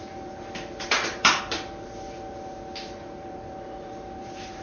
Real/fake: fake